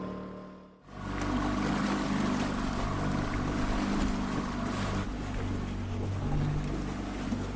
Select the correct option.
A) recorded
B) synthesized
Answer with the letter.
A